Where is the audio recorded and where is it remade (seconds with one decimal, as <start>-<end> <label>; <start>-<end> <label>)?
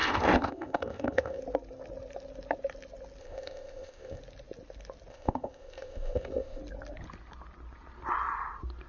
0.0-1.4 remade; 1.4-3.2 recorded; 3.2-4.2 remade; 4.2-5.1 recorded; 5.1-6.6 remade; 6.6-8.9 recorded